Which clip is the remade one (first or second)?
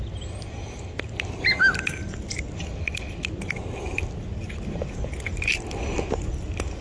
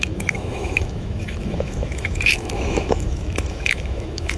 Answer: second